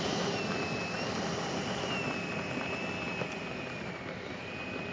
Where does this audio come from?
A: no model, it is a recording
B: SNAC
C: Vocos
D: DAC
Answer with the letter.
A